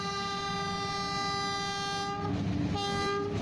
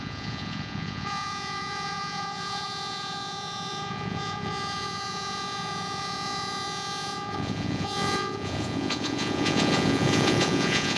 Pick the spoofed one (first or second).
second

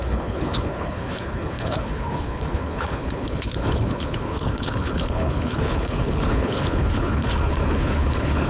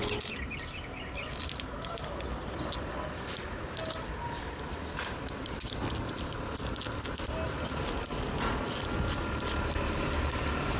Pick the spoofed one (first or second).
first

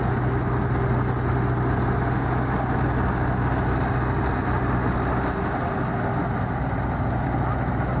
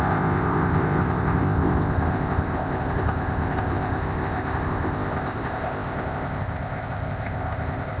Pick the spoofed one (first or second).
second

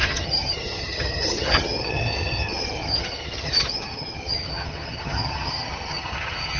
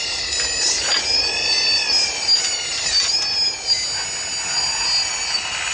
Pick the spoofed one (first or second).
first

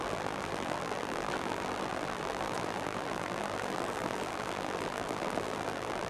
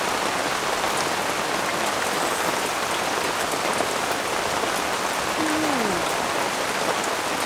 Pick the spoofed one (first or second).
first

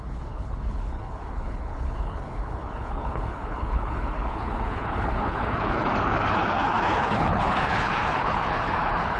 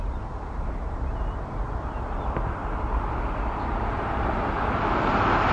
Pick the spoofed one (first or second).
first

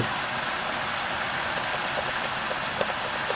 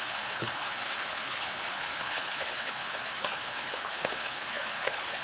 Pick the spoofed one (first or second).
second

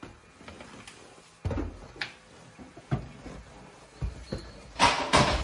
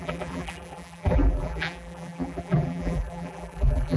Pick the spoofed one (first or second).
second